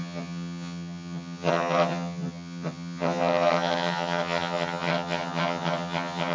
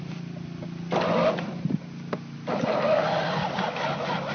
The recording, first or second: second